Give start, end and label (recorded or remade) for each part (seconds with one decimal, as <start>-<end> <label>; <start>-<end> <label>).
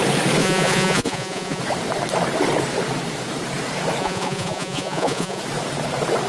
0.0-0.4 recorded; 0.4-1.6 remade; 1.6-4.0 recorded; 4.0-5.4 remade; 5.4-6.3 recorded